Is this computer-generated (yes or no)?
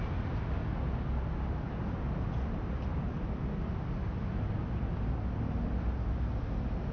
no